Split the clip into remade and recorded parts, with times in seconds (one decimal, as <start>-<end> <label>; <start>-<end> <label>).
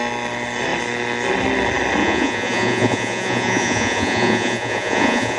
0.0-2.0 recorded; 2.0-5.4 remade